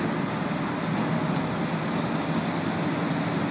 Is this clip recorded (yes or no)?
yes